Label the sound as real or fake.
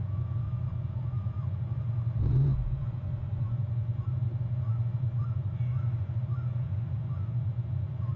fake